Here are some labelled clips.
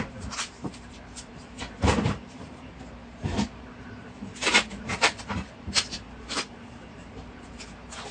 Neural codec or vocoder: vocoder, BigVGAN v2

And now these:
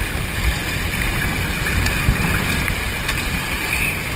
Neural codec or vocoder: none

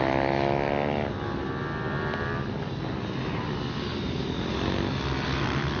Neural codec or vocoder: none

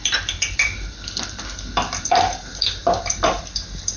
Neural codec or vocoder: vocoder, BigVGAN v2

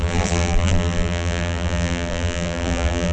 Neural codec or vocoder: vocoder, BigVGAN v2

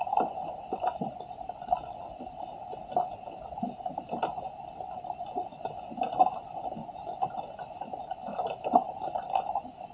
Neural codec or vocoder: none